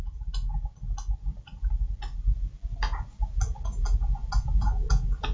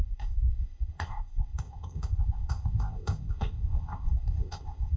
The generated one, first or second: second